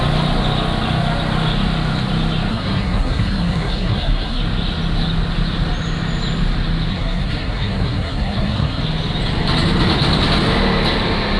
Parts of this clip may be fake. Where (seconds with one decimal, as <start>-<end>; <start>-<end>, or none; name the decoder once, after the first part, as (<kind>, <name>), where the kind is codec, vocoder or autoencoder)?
2.5-4.4 (codec, SNAC); 6.9-8.8